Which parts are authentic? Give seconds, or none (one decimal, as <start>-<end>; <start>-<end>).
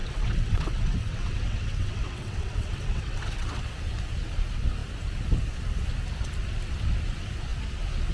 3.6-8.1